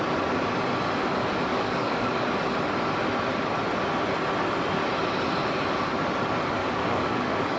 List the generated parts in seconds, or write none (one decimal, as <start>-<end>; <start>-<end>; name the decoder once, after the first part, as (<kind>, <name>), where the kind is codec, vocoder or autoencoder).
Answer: 1.5-2.1 (codec, DAC); 6.6-7.6